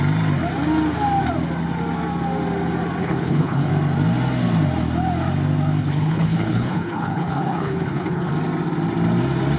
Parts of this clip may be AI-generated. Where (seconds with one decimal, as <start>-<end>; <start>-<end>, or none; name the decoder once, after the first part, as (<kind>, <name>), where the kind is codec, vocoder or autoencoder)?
3.0-3.7 (codec, HILCodec); 5.8-8.3